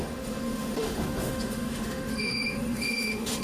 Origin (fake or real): fake